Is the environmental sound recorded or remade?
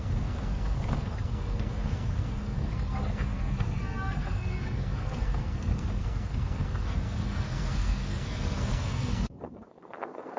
remade